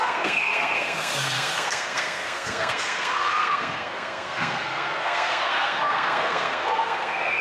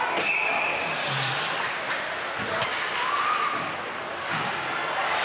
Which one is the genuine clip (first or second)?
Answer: second